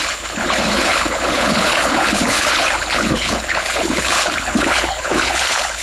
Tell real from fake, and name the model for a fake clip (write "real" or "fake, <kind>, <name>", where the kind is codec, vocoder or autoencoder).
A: fake, codec, HILCodec